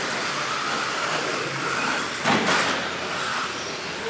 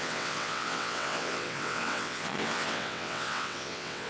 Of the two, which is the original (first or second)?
first